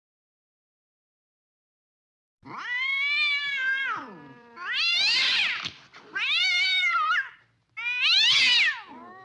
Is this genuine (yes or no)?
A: yes